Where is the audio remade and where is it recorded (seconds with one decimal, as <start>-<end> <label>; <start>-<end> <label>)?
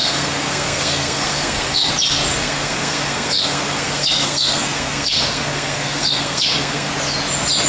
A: 0.0-1.9 remade; 1.9-2.4 recorded; 2.4-6.9 remade; 6.9-7.7 recorded